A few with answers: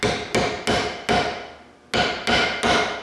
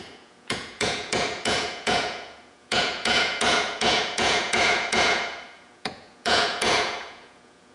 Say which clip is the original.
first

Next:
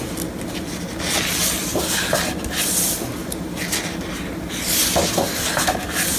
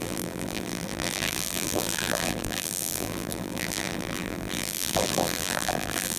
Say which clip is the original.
first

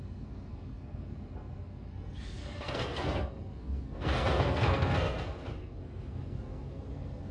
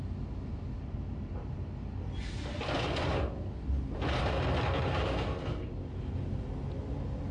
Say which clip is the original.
second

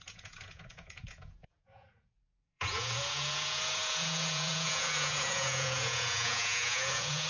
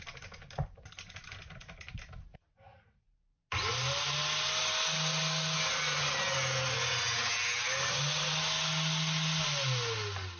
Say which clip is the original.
second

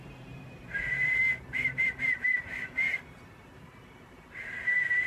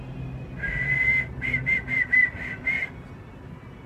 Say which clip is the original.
second